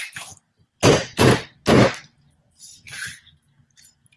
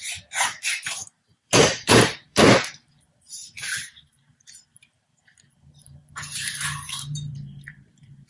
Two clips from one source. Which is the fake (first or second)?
second